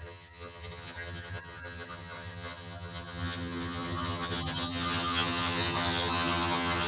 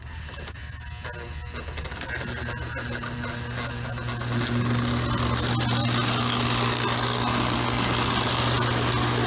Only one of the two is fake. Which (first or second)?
first